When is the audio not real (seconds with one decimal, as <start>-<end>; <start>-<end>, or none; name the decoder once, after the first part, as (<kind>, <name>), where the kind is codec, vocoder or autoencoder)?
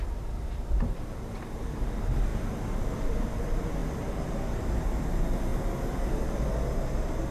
0.0-2.3 (vocoder, BigVGAN v2); 3.0-5.5